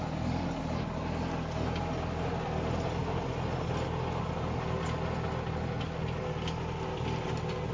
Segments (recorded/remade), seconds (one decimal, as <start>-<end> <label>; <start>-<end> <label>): 0.0-7.7 recorded